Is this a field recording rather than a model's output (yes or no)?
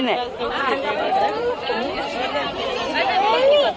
no